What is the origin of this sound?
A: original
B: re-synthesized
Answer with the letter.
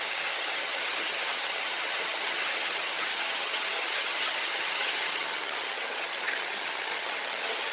B